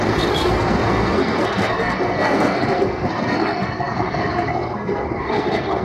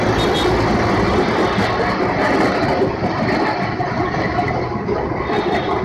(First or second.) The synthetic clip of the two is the first